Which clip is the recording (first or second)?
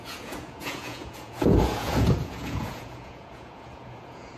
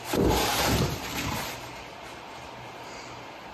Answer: second